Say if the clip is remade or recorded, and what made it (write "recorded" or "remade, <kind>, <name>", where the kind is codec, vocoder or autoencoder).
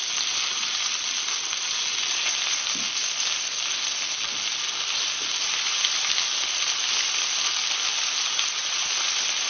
recorded